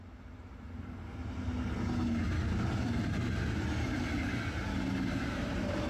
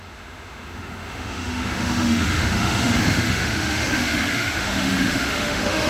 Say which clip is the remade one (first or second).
second